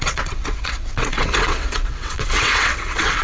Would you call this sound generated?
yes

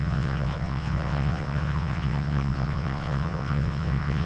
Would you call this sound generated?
yes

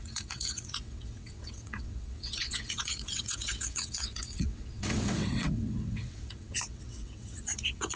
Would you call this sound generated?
yes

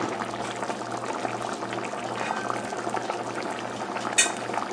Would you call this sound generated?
no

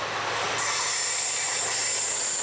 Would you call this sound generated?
no